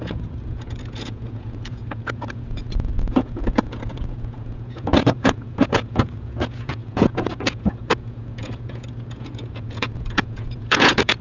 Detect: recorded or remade remade